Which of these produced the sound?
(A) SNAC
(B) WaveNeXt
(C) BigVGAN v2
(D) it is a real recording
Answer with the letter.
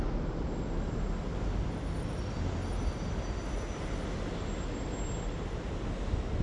D